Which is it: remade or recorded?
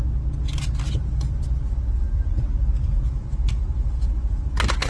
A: recorded